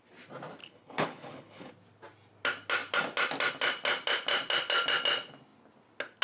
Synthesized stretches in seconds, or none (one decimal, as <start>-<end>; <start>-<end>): 0.6-1.7

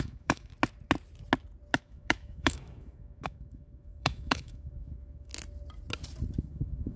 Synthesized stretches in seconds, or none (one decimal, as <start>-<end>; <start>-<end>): 0.0-0.5; 1.8-5.3; 6.4-7.0

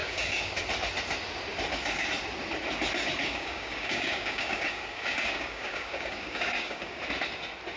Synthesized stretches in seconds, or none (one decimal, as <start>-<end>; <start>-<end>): 0.0-0.5; 3.2-7.0

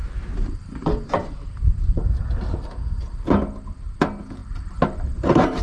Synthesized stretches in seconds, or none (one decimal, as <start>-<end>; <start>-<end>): 0.0-2.7; 4.4-5.6

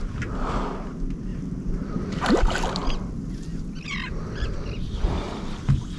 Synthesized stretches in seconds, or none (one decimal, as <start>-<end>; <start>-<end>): 1.3-2.3

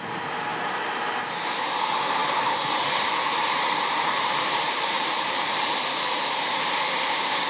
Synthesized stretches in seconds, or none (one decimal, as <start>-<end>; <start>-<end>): 0.5-1.0; 2.2-6.7

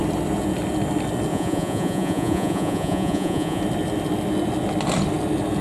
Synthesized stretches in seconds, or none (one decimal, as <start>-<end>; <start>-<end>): 1.3-3.6